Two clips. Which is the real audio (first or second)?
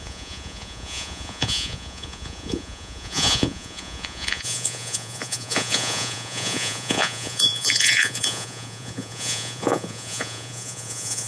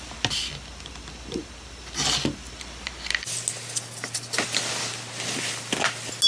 second